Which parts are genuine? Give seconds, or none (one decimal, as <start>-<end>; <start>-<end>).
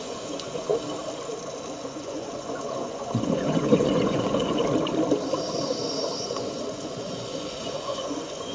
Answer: 0.7-1.7; 4.6-6.2